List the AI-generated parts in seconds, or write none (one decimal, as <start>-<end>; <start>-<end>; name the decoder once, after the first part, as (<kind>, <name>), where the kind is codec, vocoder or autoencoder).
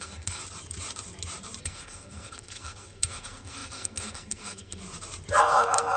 0.0-0.4 (codec, SNAC); 1.6-4.8; 5.4-6.0